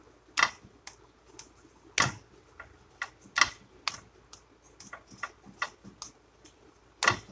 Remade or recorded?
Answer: recorded